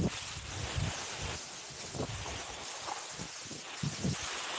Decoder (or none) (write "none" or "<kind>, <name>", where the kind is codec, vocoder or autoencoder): none